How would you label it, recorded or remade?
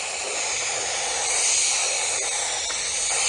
recorded